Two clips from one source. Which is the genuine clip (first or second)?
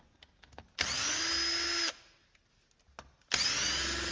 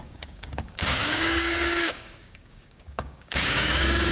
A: first